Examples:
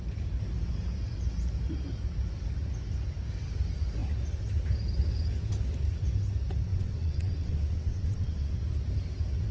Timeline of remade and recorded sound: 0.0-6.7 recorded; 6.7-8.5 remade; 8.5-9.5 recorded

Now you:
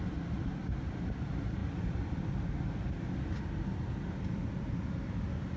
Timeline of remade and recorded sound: 0.0-5.6 recorded

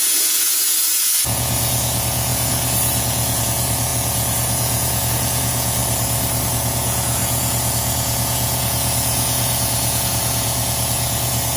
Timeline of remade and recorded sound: 0.0-5.8 remade; 5.8-6.5 recorded; 6.5-11.6 remade

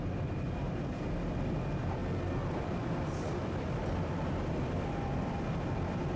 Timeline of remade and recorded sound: 0.0-2.0 remade; 2.0-2.6 recorded; 2.6-6.2 remade

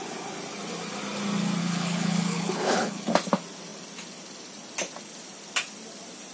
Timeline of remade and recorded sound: 0.0-1.6 recorded; 1.6-3.1 remade; 3.1-6.3 recorded

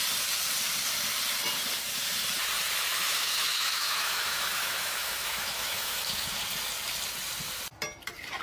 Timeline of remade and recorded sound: 0.0-2.9 recorded; 2.9-6.4 remade; 6.4-8.4 recorded

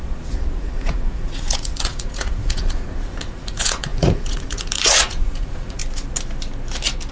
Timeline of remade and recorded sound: 0.0-5.8 remade; 5.8-7.1 recorded